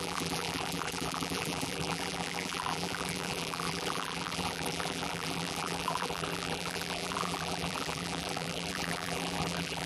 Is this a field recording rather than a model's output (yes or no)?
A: no